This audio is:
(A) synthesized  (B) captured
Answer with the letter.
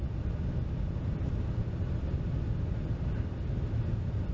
B